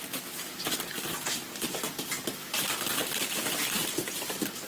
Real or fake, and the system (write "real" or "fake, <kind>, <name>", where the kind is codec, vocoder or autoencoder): real